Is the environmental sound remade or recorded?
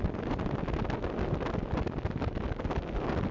recorded